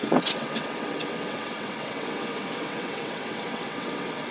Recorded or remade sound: remade